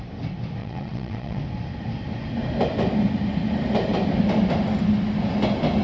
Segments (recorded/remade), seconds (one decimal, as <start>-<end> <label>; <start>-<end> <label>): 0.0-0.6 recorded; 0.6-1.4 remade; 1.4-5.8 recorded